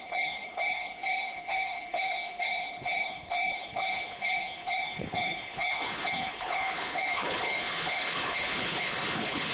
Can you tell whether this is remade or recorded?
remade